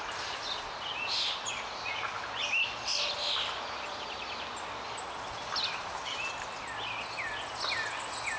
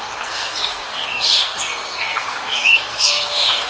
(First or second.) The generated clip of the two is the second